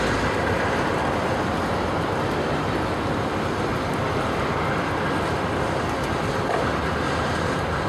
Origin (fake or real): real